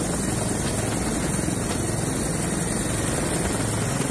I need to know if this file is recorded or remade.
recorded